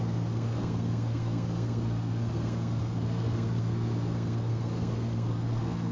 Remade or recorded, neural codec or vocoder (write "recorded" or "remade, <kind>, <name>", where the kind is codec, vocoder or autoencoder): remade, codec, SNAC